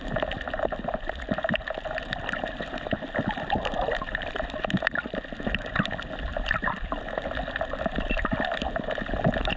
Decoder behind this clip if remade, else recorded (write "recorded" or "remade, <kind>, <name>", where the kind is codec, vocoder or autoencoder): recorded